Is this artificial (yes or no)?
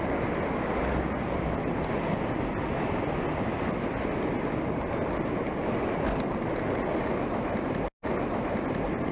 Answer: no